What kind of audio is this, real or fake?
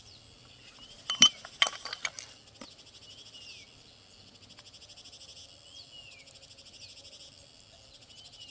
real